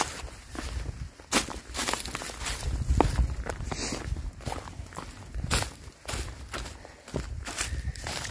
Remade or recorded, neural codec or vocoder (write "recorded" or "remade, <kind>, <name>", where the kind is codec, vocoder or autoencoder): recorded